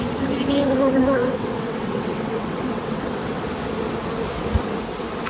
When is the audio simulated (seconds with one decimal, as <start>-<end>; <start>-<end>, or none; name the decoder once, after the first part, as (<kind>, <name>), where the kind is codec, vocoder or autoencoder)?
1.2-3.4 (vocoder, WaveNeXt)